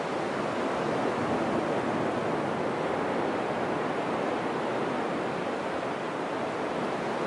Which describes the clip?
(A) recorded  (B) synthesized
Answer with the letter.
A